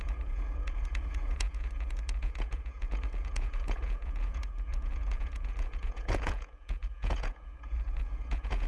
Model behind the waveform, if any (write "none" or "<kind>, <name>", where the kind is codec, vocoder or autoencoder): vocoder, Vocos